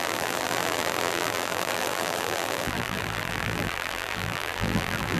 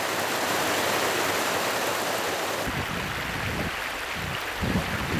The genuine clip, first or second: second